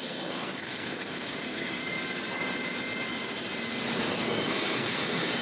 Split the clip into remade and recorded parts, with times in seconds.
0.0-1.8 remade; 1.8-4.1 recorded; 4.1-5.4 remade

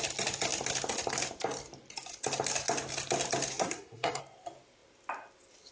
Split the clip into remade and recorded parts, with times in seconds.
0.0-3.5 recorded; 3.5-4.2 remade; 4.2-5.7 recorded

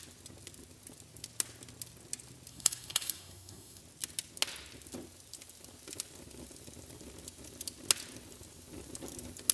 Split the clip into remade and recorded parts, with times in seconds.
0.0-2.5 recorded; 2.5-3.8 remade; 3.8-9.5 recorded

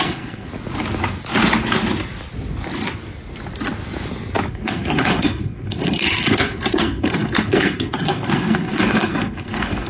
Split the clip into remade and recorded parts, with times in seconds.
0.0-0.5 remade; 0.5-4.5 recorded; 4.5-9.9 remade

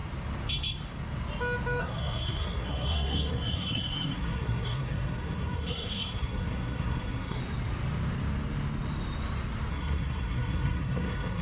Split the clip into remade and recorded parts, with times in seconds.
0.0-1.8 recorded; 1.8-7.4 remade; 7.4-9.7 recorded; 9.7-11.4 remade

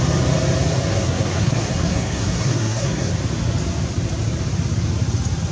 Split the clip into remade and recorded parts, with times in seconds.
0.0-0.9 recorded; 0.9-3.1 remade; 3.1-5.5 recorded